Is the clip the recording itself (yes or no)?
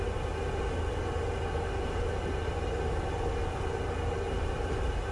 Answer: yes